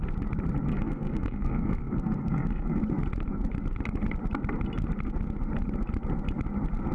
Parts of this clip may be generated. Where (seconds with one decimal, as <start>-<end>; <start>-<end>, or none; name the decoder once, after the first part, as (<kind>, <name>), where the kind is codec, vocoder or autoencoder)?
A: 0.7-2.8 (codec, SNAC)